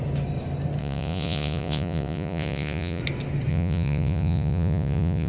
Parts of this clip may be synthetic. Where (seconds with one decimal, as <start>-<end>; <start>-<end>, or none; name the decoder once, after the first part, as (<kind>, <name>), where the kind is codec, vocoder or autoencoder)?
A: 0.8-3.0 (vocoder, Vocos); 3.5-5.3